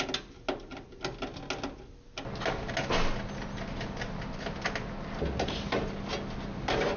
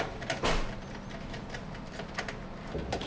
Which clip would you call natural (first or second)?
first